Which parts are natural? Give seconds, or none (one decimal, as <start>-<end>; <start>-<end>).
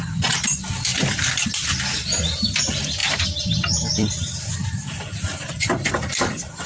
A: 0.0-0.9; 1.8-3.0